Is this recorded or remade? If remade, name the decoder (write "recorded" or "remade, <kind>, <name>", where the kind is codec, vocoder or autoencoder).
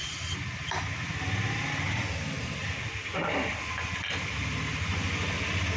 recorded